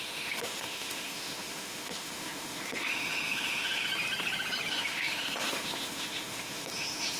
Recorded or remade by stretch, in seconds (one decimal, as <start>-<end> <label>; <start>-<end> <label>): 0.0-3.9 remade; 3.9-4.7 recorded; 4.7-7.2 remade